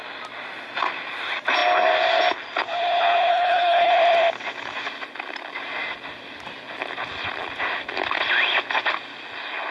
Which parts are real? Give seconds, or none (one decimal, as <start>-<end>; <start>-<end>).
0.0-3.3; 3.9-9.7